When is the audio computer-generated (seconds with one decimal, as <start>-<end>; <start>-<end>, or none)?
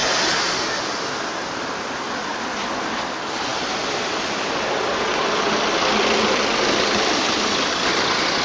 none